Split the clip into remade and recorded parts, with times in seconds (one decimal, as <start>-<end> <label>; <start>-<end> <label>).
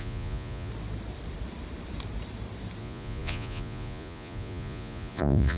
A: 0.0-0.7 remade; 0.7-2.8 recorded; 2.8-5.6 remade